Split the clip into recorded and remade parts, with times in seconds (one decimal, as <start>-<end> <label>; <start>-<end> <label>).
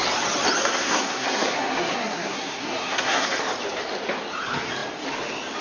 0.0-0.6 recorded; 0.6-3.4 remade; 3.4-5.6 recorded